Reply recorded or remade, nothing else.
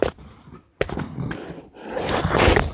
recorded